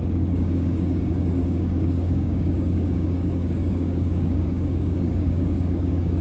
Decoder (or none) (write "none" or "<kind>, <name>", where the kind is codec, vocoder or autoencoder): codec, DAC